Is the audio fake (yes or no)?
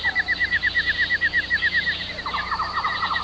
no